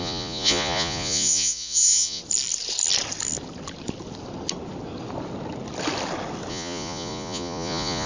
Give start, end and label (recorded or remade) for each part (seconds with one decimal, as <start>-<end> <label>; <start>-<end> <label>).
0.0-2.2 remade; 2.2-6.5 recorded; 6.5-8.1 remade